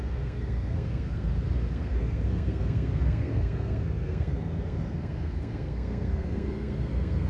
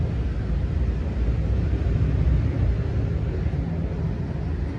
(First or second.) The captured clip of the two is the second